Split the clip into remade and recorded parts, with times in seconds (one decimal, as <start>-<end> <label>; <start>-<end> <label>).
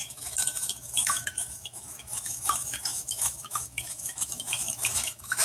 0.0-5.4 remade